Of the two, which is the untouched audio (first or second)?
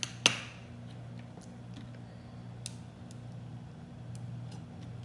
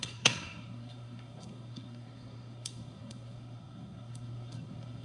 first